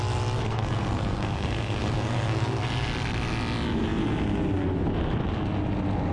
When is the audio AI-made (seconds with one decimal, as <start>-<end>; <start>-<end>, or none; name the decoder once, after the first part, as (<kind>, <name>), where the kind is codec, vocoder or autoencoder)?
0.4-2.6 (codec, SNAC)